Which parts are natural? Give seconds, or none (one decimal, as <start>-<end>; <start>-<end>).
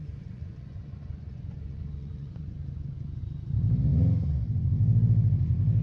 3.2-5.8